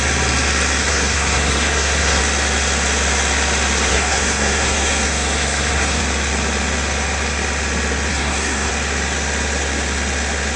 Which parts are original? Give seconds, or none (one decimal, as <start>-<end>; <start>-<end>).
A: 0.0-0.8; 2.2-3.9; 6.0-8.1; 8.7-10.6